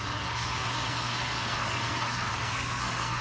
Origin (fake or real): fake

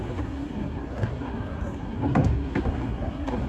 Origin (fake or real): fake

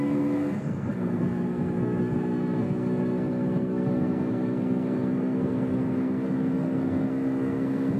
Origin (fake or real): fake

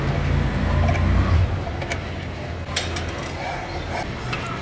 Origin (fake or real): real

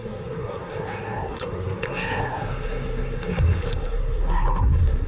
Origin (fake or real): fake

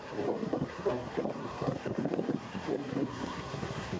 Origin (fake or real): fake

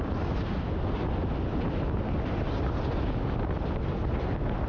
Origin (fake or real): real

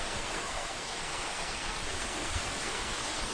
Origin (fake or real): fake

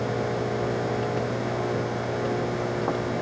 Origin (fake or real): real